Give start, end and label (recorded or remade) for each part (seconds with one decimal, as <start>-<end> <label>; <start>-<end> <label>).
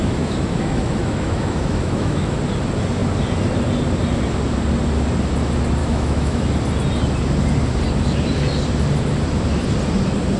0.0-2.4 remade; 2.4-5.8 recorded; 5.8-6.4 remade; 6.4-10.4 recorded